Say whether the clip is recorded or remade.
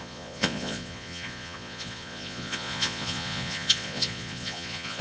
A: remade